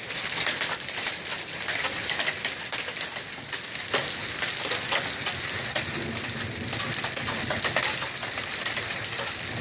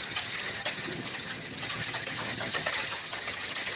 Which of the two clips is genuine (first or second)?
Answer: first